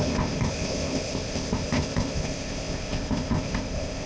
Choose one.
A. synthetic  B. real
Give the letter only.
A